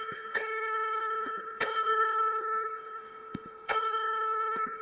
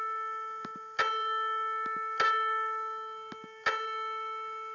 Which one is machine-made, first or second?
first